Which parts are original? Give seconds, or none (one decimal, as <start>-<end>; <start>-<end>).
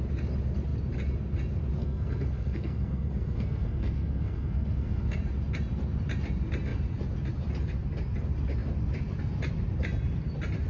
0.0-1.8; 5.2-10.7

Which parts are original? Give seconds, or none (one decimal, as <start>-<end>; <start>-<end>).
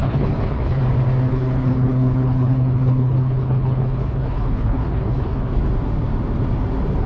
0.8-1.3; 5.6-7.1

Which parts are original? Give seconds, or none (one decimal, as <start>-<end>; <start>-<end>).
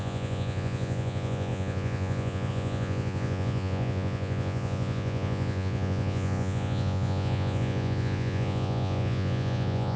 none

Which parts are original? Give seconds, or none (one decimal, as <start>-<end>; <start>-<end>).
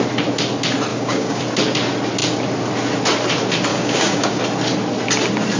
0.0-0.9; 1.4-3.7; 4.4-5.6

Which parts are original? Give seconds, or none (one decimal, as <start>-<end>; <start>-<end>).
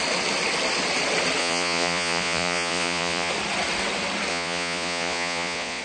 0.0-1.4; 3.3-4.3